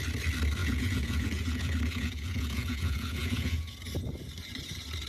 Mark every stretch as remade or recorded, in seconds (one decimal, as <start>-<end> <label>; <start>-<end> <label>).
0.0-0.6 recorded; 0.6-3.7 remade; 3.7-5.1 recorded